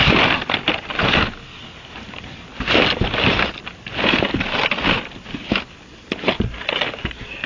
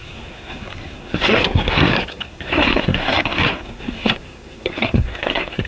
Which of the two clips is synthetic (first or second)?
second